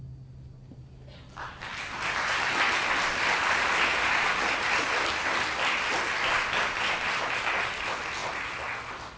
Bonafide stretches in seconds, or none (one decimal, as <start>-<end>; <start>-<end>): 0.0-9.2